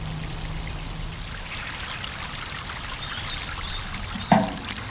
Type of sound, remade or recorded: recorded